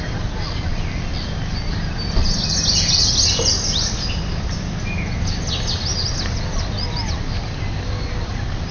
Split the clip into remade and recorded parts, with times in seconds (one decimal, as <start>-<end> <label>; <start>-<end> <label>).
0.0-8.7 recorded